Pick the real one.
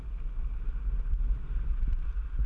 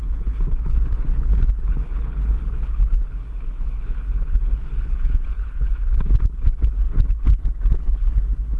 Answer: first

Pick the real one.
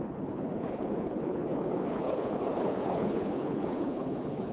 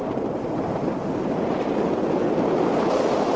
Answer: second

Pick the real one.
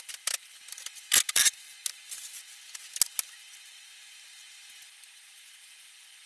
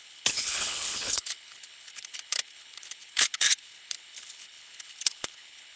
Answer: first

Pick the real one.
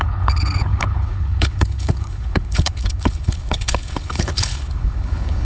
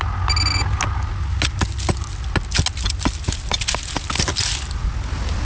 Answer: second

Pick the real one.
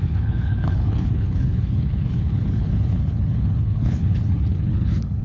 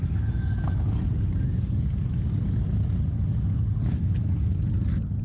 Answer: second